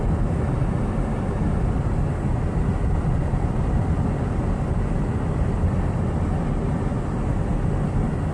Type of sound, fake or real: real